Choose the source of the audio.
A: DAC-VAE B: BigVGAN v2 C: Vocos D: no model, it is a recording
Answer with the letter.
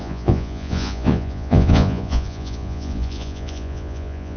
C